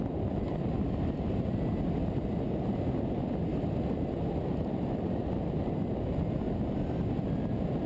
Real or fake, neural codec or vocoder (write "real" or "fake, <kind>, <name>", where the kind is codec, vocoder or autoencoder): real